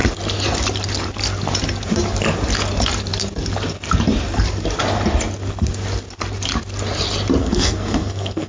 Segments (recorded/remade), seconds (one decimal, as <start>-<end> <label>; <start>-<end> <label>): 0.0-7.4 recorded; 7.4-8.5 remade